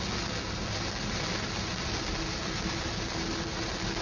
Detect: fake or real real